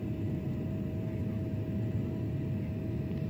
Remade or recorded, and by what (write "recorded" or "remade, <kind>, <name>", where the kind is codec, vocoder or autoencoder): recorded